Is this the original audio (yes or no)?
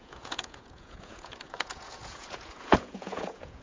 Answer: no